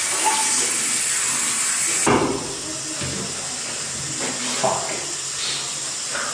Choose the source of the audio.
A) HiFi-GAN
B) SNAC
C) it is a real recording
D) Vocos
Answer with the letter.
C